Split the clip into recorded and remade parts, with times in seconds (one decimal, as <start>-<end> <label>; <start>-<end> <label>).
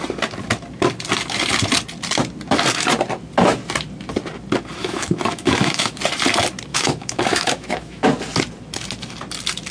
0.0-4.8 recorded; 4.8-6.0 remade; 6.0-6.7 recorded; 6.7-8.1 remade; 8.1-9.7 recorded